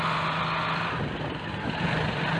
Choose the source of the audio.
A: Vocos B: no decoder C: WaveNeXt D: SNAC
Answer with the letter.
B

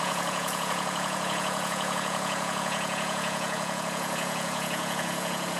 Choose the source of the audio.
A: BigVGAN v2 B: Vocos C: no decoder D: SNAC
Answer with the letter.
B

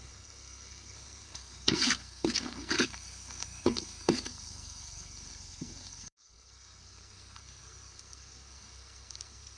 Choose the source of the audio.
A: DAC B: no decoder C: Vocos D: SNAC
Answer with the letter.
D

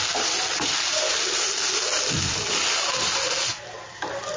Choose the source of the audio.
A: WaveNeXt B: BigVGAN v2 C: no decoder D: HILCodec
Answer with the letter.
C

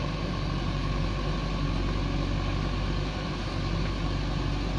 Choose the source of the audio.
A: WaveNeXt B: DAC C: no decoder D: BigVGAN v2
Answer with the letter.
C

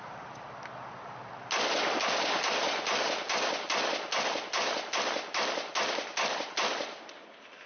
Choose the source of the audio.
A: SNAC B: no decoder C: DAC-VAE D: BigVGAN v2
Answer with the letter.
B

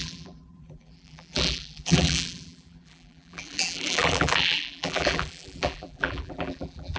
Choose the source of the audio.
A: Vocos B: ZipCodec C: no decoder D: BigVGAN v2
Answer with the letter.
D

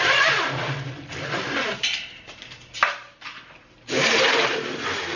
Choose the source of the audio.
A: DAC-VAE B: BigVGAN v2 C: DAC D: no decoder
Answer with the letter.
B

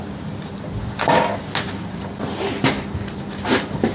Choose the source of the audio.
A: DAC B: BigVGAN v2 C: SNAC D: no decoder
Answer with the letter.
D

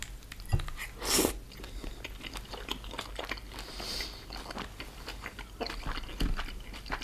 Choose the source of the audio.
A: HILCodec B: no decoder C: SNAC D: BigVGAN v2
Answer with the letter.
B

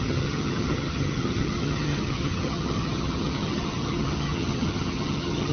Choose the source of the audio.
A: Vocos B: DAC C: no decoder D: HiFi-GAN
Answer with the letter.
D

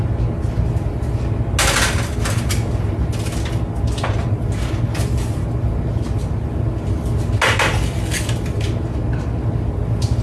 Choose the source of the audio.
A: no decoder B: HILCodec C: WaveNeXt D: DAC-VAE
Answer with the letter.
A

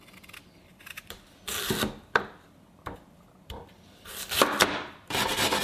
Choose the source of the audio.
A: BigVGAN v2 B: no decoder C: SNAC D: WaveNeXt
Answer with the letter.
A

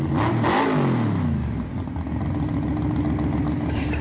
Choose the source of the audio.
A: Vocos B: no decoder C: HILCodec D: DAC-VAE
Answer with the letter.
B